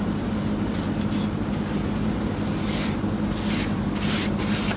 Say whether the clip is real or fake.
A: real